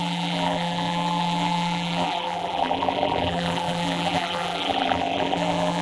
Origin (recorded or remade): remade